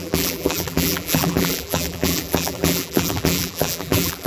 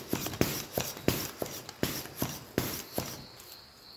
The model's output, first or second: first